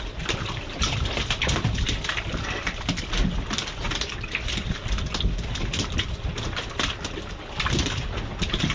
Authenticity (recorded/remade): recorded